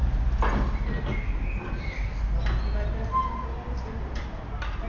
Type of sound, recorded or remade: recorded